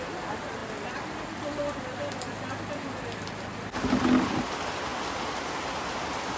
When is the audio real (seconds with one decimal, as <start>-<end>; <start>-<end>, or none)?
0.0-6.4